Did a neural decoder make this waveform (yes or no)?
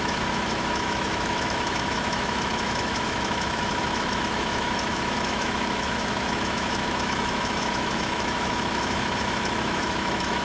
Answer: yes